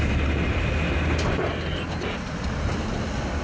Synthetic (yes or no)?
no